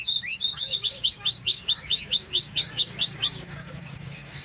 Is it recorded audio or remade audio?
remade